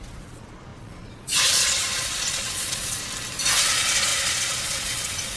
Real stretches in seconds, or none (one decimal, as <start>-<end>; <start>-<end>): 3.0-3.6